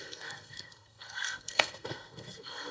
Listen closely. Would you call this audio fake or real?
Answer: fake